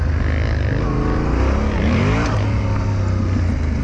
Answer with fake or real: real